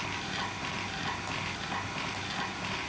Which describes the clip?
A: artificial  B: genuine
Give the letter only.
B